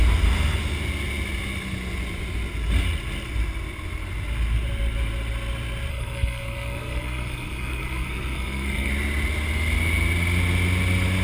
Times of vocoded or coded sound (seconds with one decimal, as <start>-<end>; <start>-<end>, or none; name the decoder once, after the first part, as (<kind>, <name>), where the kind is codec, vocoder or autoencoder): 5.9-8.9 (codec, SNAC)